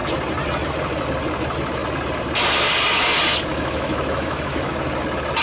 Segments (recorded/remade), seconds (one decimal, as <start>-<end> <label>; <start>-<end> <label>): 0.0-3.5 recorded; 3.5-4.7 remade; 4.7-5.4 recorded